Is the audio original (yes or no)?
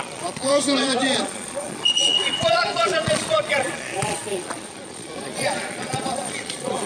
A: no